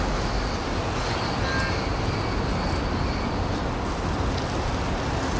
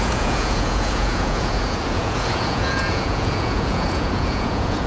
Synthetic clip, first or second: second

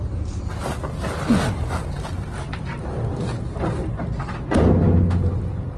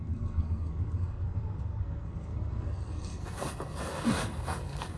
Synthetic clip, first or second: second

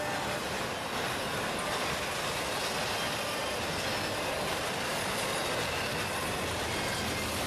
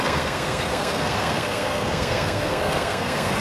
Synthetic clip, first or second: second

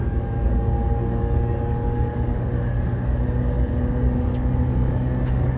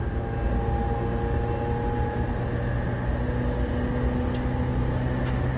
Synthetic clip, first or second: first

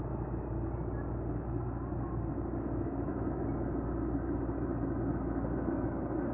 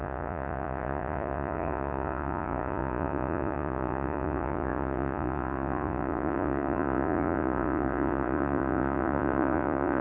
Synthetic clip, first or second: second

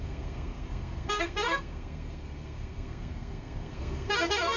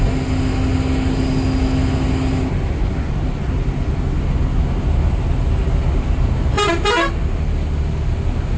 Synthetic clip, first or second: first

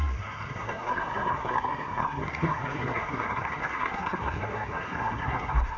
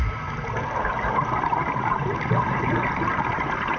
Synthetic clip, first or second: first